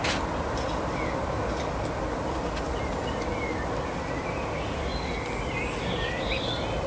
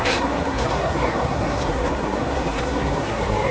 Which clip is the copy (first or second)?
second